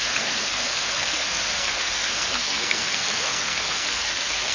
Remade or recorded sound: remade